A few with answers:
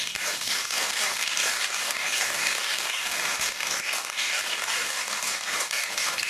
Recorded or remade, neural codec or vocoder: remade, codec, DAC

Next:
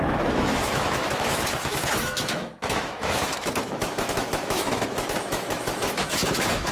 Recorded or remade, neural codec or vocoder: remade, autoencoder, DAC-VAE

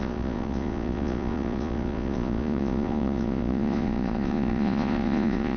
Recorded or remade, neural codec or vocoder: remade, vocoder, Vocos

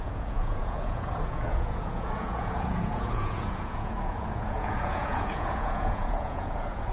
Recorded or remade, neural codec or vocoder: remade, vocoder, Vocos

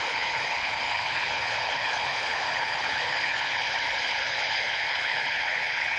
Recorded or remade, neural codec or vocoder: remade, codec, HILCodec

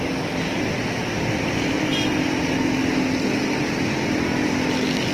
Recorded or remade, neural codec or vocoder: recorded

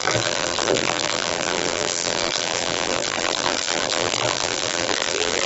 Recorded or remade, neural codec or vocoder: remade, vocoder, BigVGAN v2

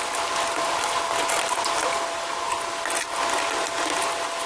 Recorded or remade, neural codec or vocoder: recorded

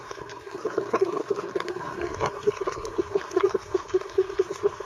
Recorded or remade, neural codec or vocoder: remade, codec, SNAC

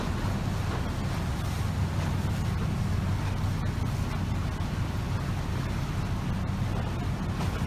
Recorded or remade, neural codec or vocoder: recorded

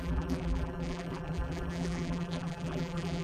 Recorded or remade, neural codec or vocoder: remade, vocoder, BigVGAN v2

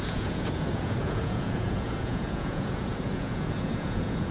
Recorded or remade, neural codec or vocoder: remade, vocoder, Vocos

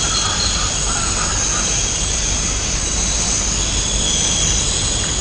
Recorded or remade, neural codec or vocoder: recorded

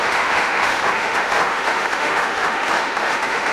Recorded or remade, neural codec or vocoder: remade, autoencoder, DAC-VAE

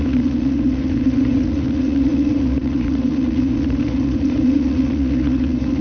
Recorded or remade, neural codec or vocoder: remade, vocoder, Vocos